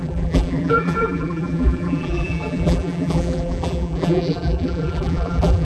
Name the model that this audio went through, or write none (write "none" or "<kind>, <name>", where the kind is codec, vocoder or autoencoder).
vocoder, BigVGAN v2